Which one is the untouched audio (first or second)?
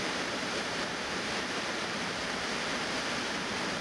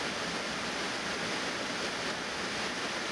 second